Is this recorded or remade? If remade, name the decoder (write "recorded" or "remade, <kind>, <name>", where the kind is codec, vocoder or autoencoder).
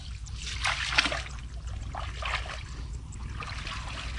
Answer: recorded